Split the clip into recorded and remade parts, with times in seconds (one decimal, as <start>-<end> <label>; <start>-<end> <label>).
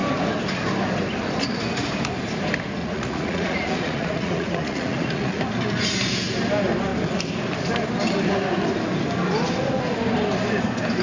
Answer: 0.0-2.8 recorded; 2.8-5.4 remade; 5.4-11.0 recorded